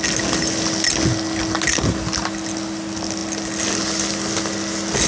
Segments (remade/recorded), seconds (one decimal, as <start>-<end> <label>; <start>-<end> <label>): 0.0-5.1 recorded